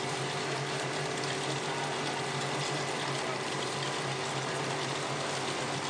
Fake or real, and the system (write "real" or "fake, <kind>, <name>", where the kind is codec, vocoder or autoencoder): real